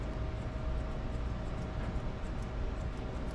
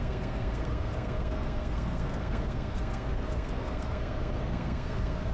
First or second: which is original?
first